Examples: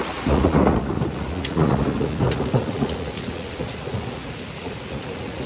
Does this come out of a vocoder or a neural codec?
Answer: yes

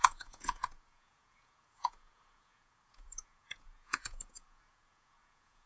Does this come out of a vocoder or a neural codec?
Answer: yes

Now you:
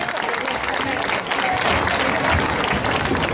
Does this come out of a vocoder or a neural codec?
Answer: no